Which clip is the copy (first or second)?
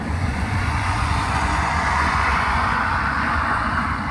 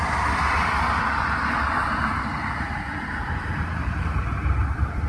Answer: first